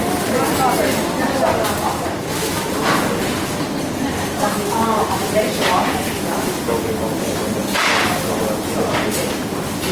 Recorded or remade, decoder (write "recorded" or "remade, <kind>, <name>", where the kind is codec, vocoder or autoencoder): recorded